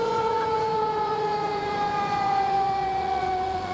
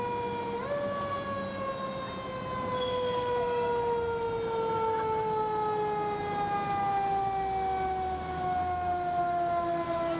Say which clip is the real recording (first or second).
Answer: second